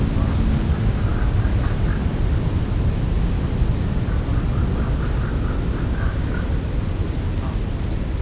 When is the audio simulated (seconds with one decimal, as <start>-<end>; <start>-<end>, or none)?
none